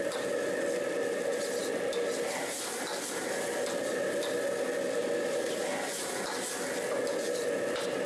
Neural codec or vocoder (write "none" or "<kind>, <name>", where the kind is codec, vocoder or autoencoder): none